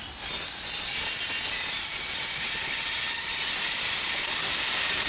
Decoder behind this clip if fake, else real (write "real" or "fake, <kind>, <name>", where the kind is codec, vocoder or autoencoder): real